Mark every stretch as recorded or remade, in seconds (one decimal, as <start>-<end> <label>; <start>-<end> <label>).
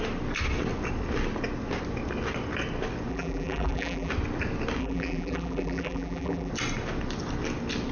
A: 0.0-3.1 recorded; 3.1-4.1 remade; 4.1-4.8 recorded; 4.8-6.5 remade; 6.5-7.9 recorded